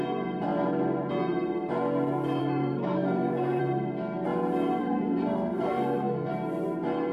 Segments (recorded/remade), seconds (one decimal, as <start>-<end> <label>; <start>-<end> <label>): 0.0-2.4 recorded; 2.4-3.6 remade; 3.6-4.8 recorded; 4.8-6.3 remade; 6.3-7.1 recorded